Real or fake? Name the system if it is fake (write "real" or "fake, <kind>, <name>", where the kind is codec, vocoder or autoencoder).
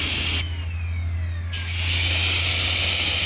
real